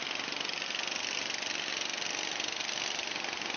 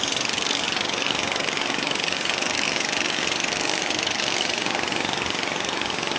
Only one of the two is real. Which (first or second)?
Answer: first